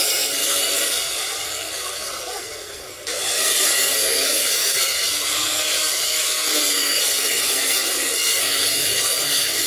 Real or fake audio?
fake